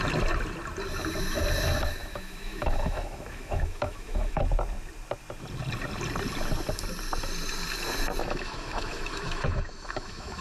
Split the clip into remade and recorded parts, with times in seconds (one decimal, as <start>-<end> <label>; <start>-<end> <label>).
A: 0.0-2.0 recorded; 2.0-4.4 remade; 4.4-8.2 recorded; 8.2-10.4 remade